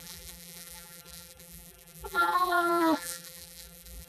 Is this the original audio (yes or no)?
no